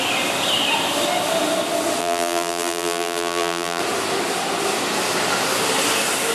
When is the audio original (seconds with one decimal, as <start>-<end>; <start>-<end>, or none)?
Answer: 0.0-2.0; 3.8-6.3